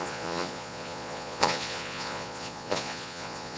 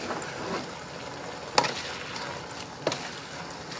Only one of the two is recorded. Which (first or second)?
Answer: second